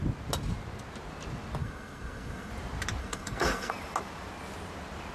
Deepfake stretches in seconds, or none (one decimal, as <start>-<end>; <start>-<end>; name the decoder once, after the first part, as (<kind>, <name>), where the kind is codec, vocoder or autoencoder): 1.6-2.5 (codec, SNAC); 3.0-3.7